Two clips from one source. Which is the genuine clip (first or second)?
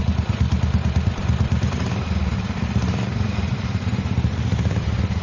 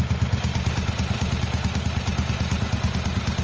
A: second